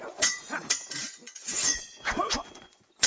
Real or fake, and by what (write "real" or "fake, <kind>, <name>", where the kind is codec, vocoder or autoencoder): fake, vocoder, Vocos